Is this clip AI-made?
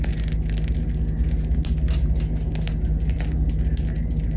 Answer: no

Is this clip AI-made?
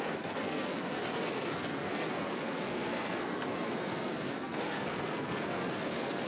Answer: yes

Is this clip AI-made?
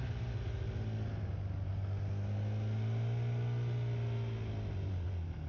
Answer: no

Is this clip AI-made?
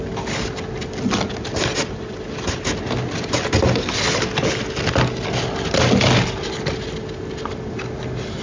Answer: no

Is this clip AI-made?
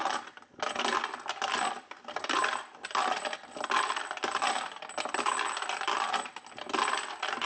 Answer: no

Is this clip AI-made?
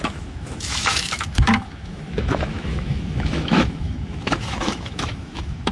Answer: yes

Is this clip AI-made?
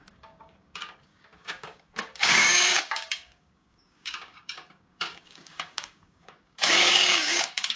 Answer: yes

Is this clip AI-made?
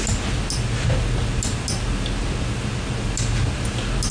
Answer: no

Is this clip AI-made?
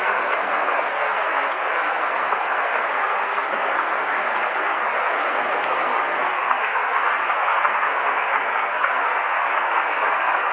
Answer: yes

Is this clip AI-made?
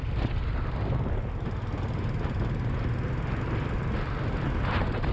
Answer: no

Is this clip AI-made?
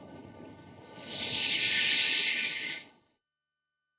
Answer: yes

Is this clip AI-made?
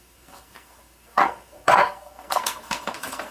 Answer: yes